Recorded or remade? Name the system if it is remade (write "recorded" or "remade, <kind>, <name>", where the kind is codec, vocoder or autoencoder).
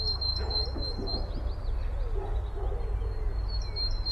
recorded